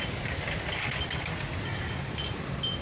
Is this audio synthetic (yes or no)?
no